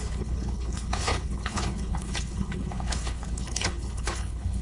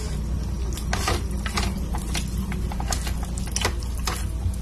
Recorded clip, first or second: second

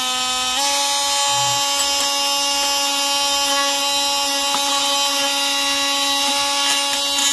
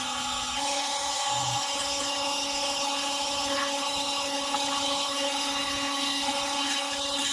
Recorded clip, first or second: first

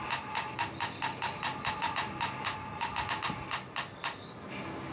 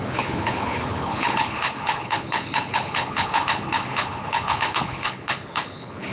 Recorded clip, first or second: first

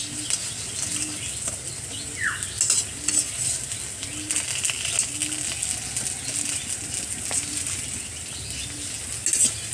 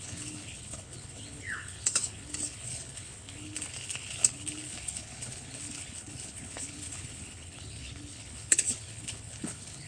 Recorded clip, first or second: first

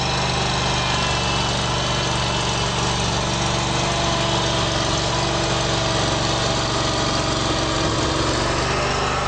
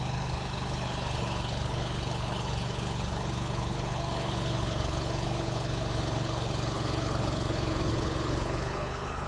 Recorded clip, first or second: first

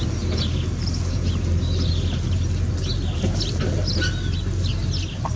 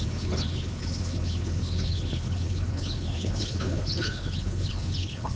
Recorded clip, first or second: first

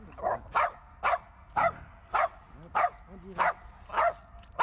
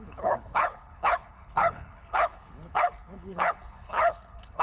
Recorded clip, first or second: first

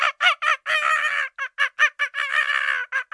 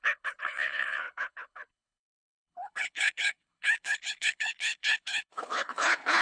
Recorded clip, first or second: first